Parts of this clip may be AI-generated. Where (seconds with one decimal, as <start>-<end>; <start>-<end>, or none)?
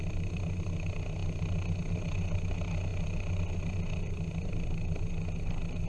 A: none